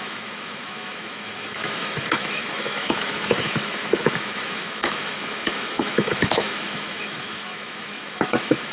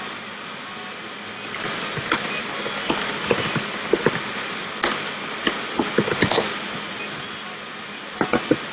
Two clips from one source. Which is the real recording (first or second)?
second